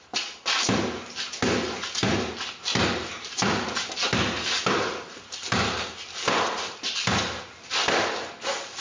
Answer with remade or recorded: recorded